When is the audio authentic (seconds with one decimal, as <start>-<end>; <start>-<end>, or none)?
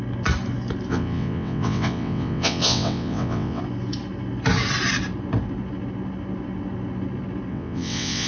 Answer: 0.0-0.9; 3.6-7.5